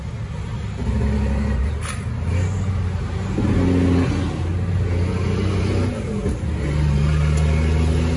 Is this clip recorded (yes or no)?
yes